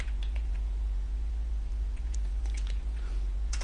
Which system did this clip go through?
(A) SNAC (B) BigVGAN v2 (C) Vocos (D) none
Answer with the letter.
C